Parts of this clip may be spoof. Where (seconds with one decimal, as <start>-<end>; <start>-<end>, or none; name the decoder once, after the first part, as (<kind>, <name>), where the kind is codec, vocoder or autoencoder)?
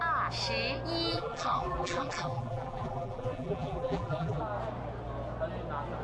1.1-4.4 (vocoder, BigVGAN v2)